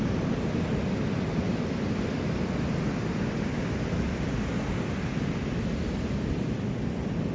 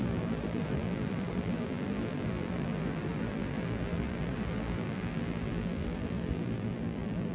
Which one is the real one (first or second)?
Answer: first